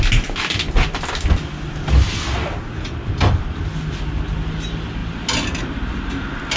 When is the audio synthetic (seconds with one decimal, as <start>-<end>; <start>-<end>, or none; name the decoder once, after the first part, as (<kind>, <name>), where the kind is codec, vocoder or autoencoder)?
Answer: none